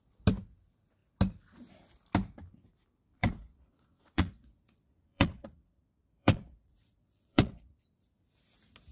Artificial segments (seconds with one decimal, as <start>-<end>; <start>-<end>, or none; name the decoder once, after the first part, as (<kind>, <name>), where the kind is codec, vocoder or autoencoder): 3.1-7.8 (vocoder, Vocos)

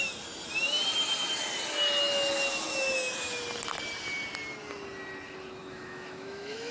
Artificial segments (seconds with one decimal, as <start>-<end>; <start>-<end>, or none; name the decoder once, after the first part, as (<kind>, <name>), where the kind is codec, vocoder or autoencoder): 5.6-6.7 (autoencoder, DAC-VAE)

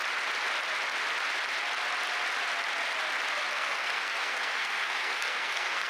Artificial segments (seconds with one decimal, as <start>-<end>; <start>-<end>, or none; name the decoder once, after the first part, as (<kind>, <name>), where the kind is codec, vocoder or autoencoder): 3.5-5.9 (codec, SNAC)